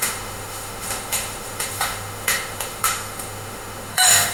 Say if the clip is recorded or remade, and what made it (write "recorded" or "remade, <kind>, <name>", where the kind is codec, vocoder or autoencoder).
remade, autoencoder, DAC-VAE